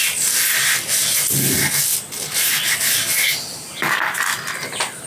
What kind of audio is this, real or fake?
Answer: real